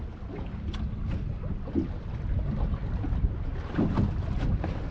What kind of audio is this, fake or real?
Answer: real